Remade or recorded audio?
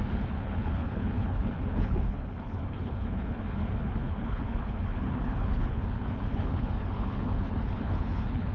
remade